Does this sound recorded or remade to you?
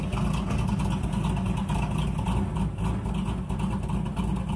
recorded